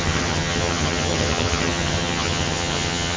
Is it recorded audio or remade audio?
remade